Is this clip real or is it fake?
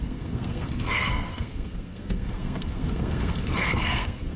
fake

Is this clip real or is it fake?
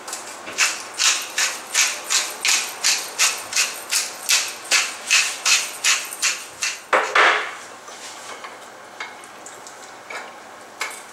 real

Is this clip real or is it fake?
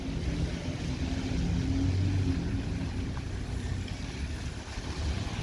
real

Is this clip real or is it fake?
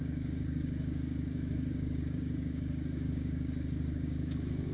fake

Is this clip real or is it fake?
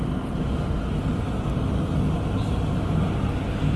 real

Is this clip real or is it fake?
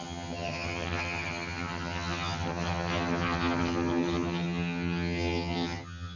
fake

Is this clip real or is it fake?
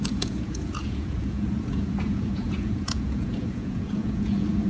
fake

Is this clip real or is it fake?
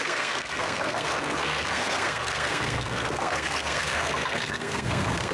fake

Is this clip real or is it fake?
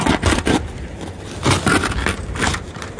real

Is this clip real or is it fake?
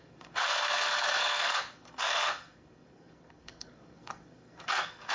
fake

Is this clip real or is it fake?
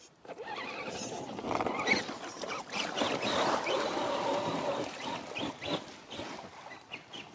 real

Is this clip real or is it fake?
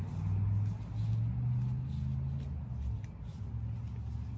real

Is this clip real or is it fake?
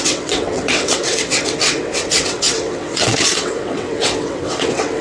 fake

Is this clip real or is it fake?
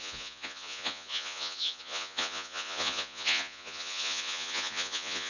fake